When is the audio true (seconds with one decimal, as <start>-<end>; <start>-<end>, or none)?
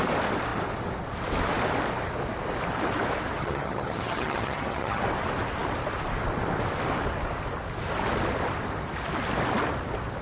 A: 0.0-3.4; 5.0-10.2